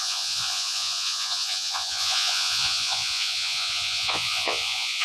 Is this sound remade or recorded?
remade